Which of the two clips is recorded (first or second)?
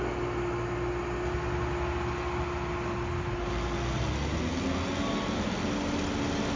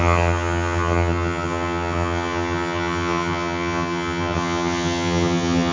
first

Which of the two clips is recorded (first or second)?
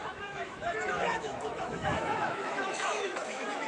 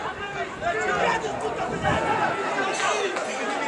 second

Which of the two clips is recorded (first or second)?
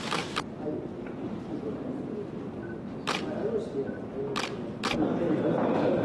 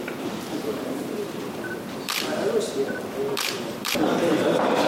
first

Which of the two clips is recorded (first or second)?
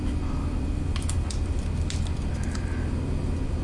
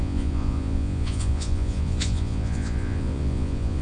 first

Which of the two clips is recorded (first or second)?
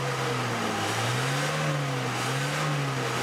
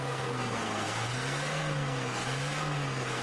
first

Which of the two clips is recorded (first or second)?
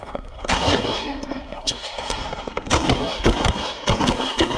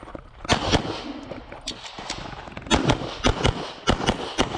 second